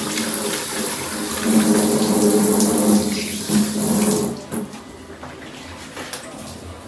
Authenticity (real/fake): real